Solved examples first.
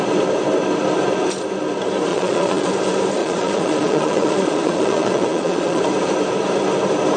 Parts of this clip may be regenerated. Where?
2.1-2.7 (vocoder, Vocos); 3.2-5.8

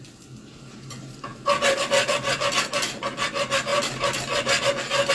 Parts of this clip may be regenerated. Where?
none

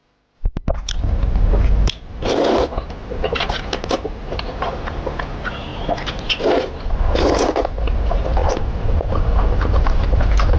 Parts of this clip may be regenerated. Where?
none

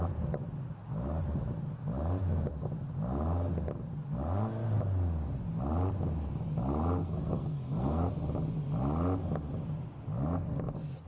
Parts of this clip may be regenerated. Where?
7.0-8.1 (codec, SNAC)

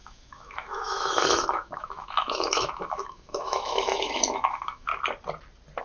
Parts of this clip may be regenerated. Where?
0.0-4.9 (autoencoder, DAC-VAE)

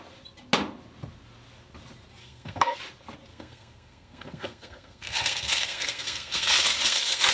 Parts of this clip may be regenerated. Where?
2.2-2.8 (codec, SNAC); 3.3-7.3